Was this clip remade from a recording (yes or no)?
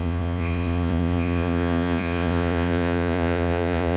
yes